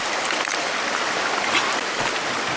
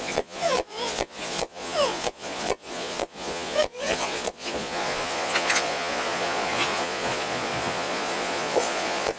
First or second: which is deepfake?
second